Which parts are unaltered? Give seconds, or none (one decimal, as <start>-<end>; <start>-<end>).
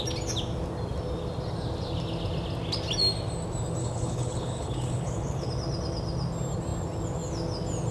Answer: 0.0-3.8; 5.5-7.9